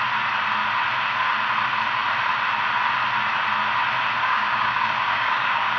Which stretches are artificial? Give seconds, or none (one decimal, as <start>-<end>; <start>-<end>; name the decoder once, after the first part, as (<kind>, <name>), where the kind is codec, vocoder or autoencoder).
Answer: 4.2-5.8 (codec, DAC)